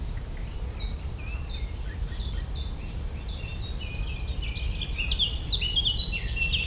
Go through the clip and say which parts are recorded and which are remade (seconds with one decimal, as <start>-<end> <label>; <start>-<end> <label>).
0.0-6.7 recorded

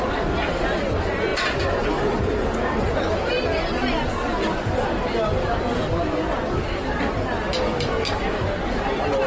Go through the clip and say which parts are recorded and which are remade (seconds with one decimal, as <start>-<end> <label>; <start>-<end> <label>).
0.0-9.3 recorded

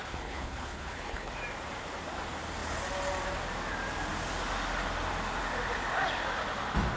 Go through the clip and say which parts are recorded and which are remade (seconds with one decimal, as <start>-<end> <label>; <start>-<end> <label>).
0.0-1.3 remade; 1.3-7.0 recorded

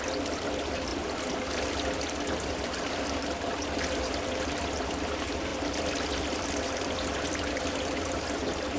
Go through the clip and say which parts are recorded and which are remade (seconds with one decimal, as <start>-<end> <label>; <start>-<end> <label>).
0.0-8.8 recorded

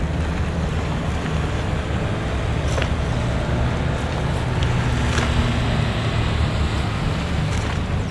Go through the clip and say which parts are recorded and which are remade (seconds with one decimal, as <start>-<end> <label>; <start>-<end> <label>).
0.0-8.1 recorded

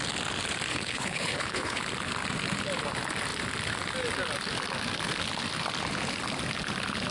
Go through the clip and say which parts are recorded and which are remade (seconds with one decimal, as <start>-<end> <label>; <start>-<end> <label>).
0.0-0.7 recorded; 0.7-1.8 remade; 1.8-7.1 recorded